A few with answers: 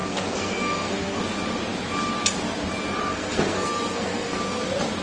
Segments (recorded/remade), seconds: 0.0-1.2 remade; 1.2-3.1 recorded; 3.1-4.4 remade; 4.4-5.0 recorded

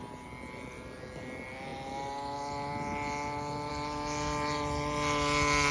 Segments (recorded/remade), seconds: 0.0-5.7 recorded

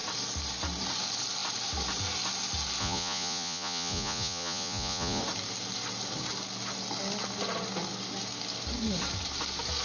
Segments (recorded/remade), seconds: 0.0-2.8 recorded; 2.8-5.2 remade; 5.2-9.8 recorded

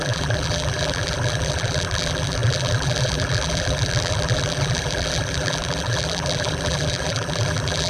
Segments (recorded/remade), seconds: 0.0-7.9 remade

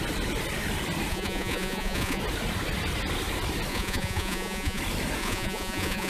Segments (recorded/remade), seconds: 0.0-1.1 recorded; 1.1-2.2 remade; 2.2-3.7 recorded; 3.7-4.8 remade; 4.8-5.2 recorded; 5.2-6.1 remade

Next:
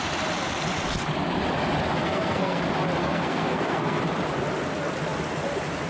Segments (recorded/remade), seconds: 0.0-2.0 recorded; 2.0-2.6 remade; 2.6-3.0 recorded; 3.0-4.0 remade; 4.0-5.9 recorded